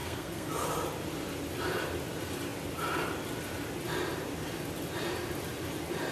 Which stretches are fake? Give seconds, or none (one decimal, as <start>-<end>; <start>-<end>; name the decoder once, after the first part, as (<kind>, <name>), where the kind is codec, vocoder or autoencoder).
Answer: 0.0-0.5 (codec, SNAC)